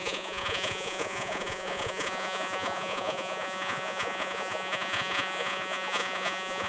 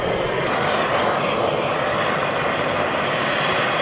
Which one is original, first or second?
second